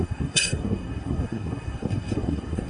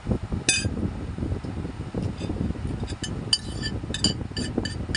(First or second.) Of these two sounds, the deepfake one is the first